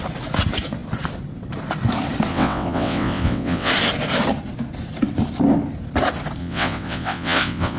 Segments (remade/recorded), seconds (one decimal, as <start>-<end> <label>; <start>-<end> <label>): 0.0-2.3 recorded; 2.3-3.7 remade; 3.7-6.4 recorded; 6.4-7.8 remade